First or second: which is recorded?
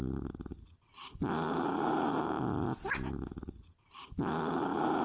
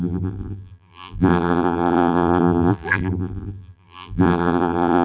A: first